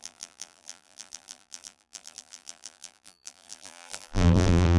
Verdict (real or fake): fake